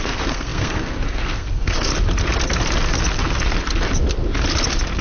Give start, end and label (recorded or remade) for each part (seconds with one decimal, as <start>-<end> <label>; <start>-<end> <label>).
0.0-1.9 remade; 1.9-5.0 recorded